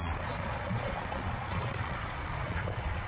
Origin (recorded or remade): remade